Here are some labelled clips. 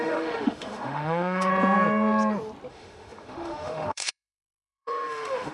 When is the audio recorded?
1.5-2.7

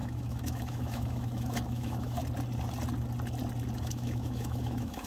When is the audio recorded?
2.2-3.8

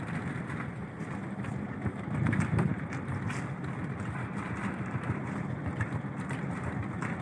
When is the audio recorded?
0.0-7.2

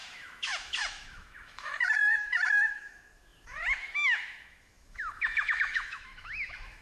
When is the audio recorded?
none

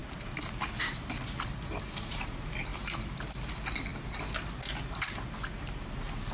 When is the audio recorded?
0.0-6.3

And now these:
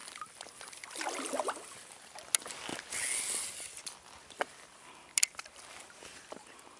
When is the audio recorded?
0.0-6.8

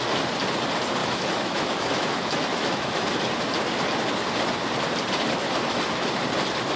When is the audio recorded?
0.0-1.0; 3.1-6.8

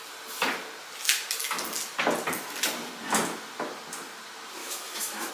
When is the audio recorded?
0.0-4.6